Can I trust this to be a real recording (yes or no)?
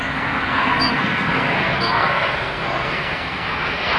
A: no